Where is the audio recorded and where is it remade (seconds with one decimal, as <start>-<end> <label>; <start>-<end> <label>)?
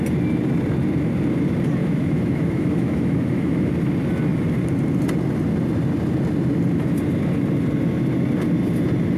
0.0-1.8 recorded; 1.8-3.7 remade; 3.7-9.2 recorded